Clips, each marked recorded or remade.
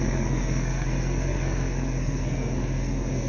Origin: remade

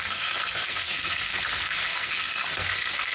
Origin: remade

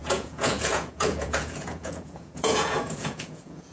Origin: remade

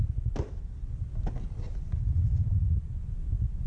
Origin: recorded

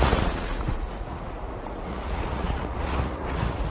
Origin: remade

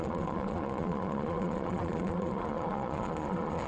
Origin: remade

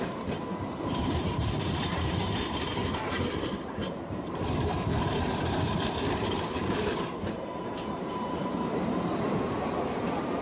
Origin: remade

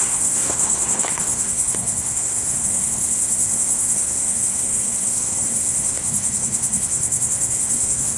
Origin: remade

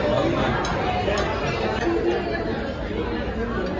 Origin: recorded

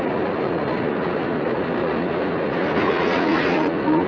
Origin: remade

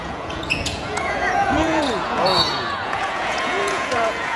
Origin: remade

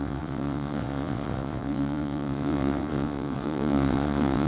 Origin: remade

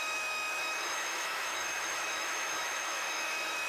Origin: remade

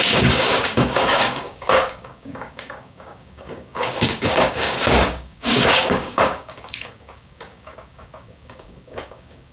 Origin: remade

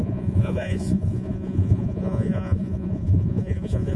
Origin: remade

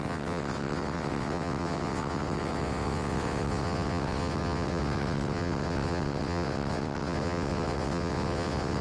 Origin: remade